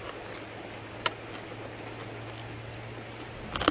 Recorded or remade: recorded